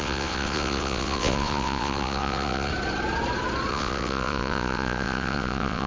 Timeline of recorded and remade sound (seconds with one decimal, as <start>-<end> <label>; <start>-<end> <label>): 0.0-2.7 remade; 2.7-3.7 recorded; 3.7-5.9 remade